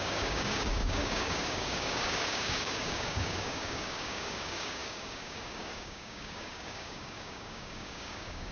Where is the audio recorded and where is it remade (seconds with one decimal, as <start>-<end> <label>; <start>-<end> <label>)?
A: 0.0-8.5 remade